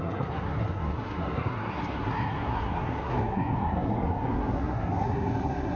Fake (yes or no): yes